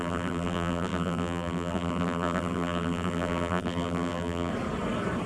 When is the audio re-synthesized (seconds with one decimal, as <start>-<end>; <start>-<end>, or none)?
0.0-4.5